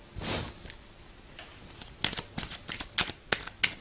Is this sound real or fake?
real